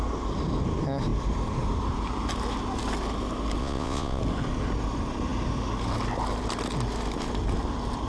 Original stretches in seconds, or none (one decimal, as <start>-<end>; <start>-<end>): 0.0-3.6; 4.2-8.1